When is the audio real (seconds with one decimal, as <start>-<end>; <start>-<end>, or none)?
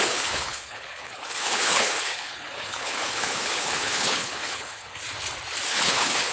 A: 5.0-5.7